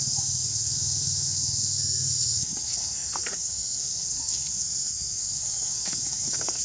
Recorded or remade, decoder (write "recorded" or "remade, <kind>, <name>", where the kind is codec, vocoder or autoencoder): remade, codec, SNAC